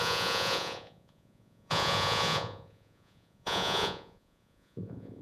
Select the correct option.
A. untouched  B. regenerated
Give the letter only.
B